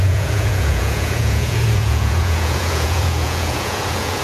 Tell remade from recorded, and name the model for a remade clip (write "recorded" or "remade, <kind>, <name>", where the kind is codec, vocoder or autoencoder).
remade, vocoder, Vocos